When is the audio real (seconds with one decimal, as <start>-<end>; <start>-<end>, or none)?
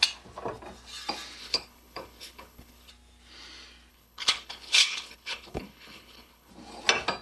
0.0-1.4; 2.9-3.9; 6.5-7.2